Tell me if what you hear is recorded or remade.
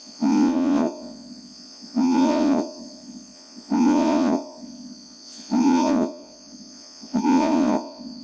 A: remade